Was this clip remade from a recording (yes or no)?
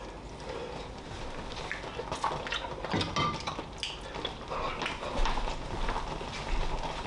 no